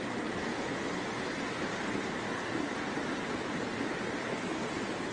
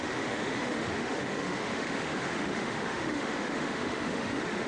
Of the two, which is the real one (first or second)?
first